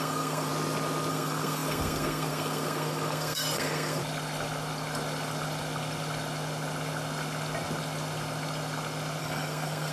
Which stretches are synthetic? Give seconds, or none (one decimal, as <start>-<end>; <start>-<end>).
0.0-0.5; 1.1-4.0; 9.2-9.9